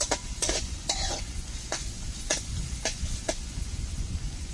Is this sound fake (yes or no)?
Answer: yes